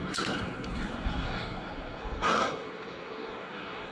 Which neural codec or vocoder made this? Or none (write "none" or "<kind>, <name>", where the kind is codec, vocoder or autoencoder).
codec, SNAC